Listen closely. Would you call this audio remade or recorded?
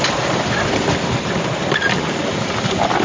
recorded